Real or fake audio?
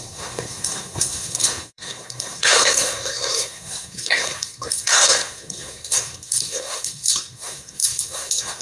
fake